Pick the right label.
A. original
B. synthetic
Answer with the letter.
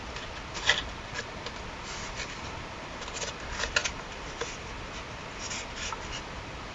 A